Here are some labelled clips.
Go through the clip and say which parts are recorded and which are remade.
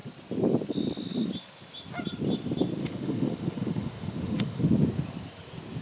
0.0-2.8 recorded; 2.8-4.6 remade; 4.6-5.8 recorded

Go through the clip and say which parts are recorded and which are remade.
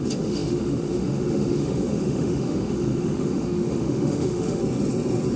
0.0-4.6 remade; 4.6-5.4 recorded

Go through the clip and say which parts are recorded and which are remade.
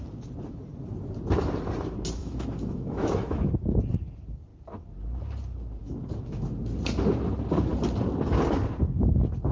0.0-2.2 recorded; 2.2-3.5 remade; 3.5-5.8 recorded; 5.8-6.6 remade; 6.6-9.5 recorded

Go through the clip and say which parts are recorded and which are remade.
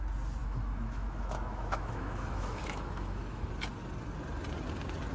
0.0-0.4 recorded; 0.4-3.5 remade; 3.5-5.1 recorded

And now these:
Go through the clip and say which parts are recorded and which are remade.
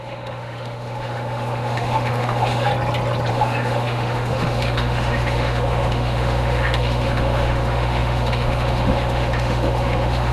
0.0-2.7 remade; 2.7-3.3 recorded; 3.3-10.3 remade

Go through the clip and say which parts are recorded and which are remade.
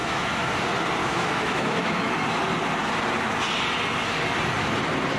0.0-0.5 remade; 0.5-1.0 recorded; 1.0-2.1 remade; 2.1-5.2 recorded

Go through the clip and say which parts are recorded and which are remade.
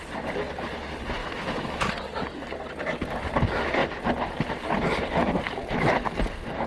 0.0-1.2 recorded; 1.2-1.9 remade; 1.9-6.7 recorded